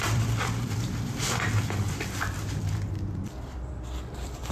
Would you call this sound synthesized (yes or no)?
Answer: yes